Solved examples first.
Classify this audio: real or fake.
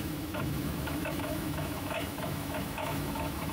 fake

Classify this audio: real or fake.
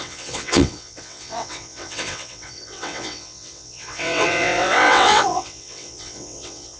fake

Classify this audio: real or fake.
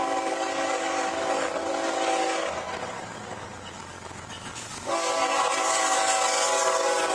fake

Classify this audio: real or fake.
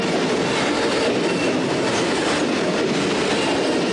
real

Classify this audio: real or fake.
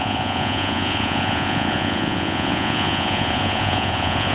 fake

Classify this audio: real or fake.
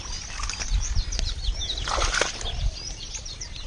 real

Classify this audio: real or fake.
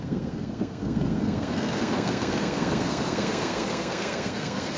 fake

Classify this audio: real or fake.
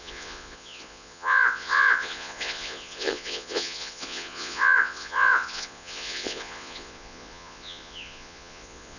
fake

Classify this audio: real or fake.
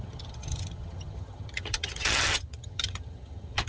fake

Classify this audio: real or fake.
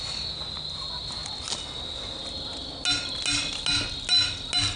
real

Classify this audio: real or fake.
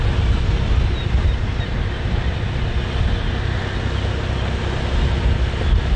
real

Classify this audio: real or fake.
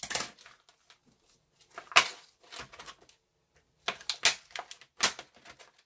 real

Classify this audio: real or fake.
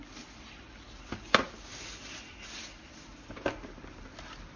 real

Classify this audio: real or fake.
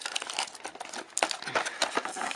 real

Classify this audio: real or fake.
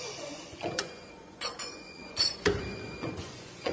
fake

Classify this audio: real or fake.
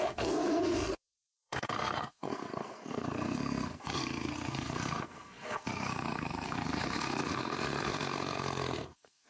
fake